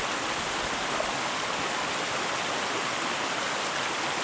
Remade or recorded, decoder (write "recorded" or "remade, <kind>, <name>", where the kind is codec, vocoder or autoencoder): recorded